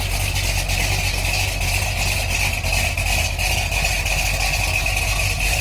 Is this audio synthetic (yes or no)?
no